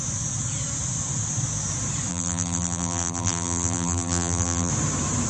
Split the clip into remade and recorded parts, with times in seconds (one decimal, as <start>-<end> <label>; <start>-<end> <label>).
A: 0.0-2.1 recorded; 2.1-4.7 remade; 4.7-5.3 recorded